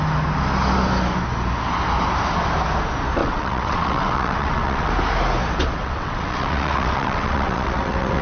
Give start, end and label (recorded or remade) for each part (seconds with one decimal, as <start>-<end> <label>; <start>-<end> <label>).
0.0-3.2 recorded; 3.2-4.9 remade; 4.9-5.8 recorded; 5.8-8.2 remade